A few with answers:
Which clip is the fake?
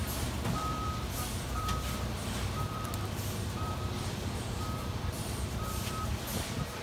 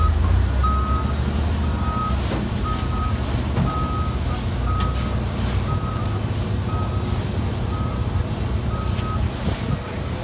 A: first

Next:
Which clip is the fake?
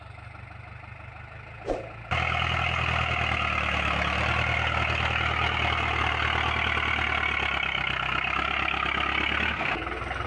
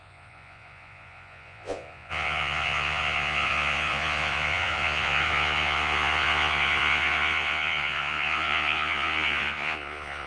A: second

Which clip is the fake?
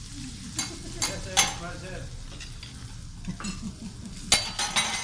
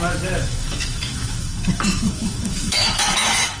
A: second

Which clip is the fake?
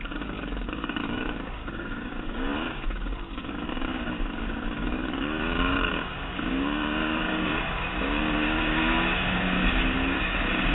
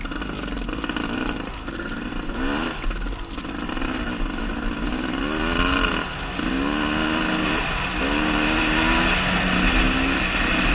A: first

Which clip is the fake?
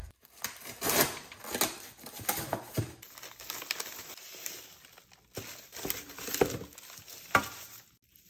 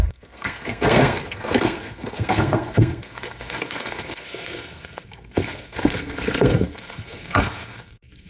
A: second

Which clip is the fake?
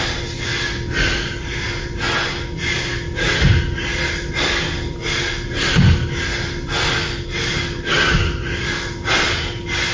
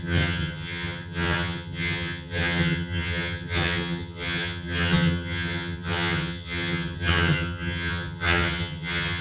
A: second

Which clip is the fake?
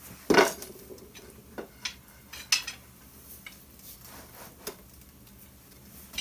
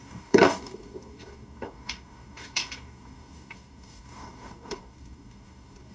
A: second